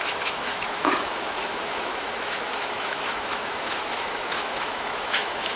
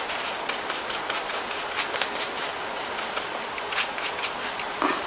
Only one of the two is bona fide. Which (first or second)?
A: second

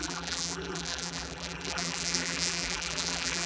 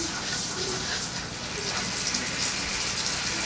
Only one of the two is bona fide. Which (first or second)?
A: second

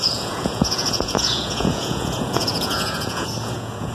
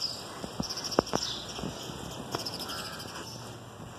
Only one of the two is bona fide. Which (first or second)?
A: second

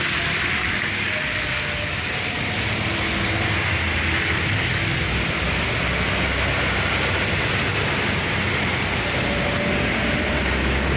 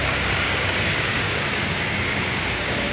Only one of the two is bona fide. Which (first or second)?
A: first